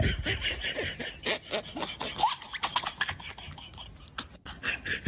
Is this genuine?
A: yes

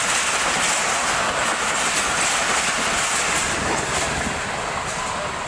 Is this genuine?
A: yes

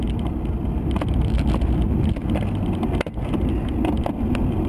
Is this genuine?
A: yes